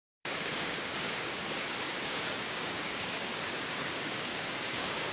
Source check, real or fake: fake